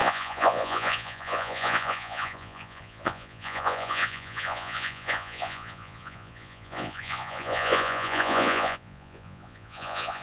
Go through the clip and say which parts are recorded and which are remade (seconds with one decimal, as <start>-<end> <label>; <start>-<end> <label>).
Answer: 0.0-10.2 remade